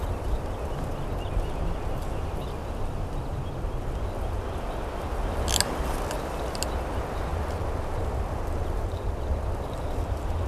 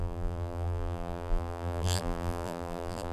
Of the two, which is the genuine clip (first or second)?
first